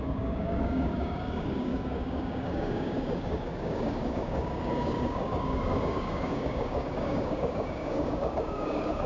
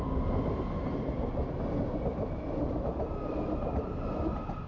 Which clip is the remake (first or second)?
first